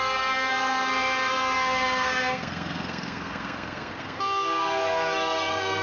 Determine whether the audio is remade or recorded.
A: remade